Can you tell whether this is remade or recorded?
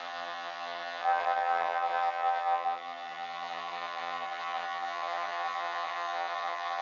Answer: remade